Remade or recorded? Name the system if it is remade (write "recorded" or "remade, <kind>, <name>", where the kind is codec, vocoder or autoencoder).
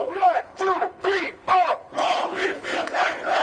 remade, codec, HILCodec